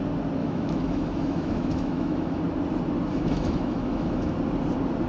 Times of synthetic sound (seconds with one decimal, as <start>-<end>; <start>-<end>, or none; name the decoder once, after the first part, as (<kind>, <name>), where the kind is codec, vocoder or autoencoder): 0.4-2.4 (autoencoder, DAC-VAE); 3.1-4.3